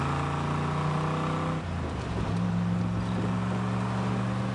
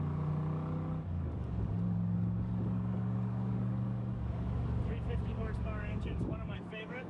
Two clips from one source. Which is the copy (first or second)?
second